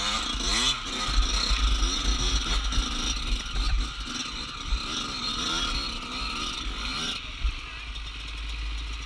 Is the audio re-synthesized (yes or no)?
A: no